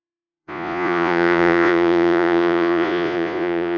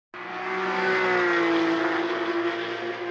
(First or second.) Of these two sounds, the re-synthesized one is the first